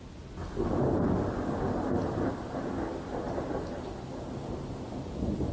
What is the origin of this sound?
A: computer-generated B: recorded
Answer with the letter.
B